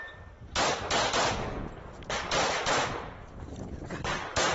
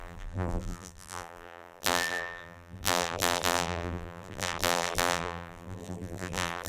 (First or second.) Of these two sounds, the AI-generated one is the second